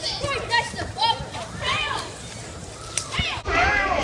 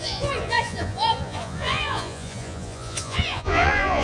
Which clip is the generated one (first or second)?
second